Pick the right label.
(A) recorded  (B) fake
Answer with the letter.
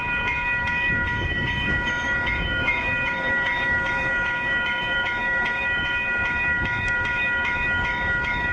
B